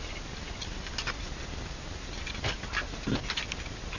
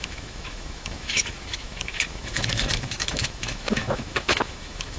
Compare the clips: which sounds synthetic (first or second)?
second